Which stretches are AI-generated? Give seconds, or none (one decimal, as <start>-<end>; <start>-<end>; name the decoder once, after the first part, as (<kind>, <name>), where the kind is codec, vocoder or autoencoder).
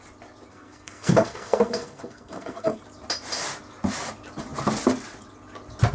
0.5-2.8 (codec, SNAC)